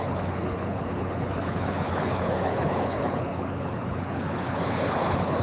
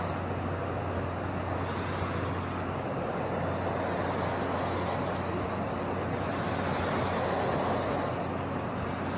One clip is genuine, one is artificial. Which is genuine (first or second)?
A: second